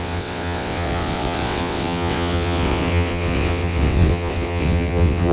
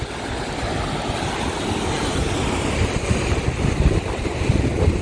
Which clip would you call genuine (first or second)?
second